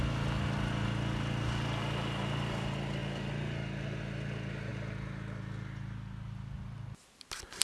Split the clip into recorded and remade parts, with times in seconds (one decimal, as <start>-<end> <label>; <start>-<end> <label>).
0.0-7.6 recorded